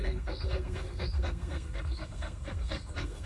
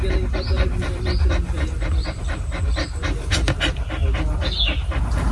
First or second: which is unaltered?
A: second